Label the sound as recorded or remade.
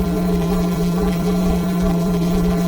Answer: remade